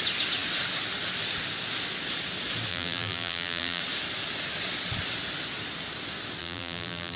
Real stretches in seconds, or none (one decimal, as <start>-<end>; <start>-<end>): 0.0-2.7; 3.8-6.4